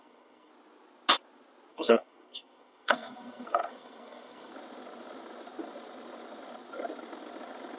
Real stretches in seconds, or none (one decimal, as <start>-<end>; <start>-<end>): 0.5-1.7; 4.5-7.8